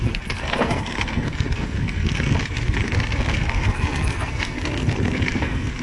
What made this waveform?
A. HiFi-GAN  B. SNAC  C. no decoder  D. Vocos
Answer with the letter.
B